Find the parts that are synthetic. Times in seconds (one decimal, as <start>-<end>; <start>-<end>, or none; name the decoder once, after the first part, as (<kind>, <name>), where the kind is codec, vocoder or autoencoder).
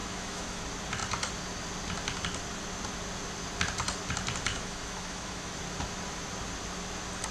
0.0-0.6 (autoencoder, DAC-VAE); 4.5-5.6